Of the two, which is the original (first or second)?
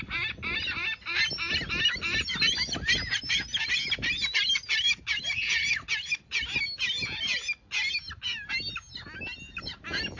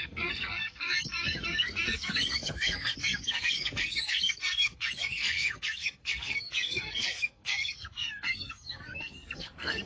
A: first